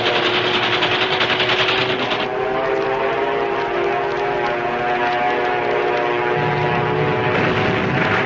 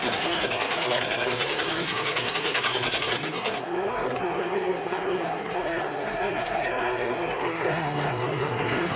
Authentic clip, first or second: first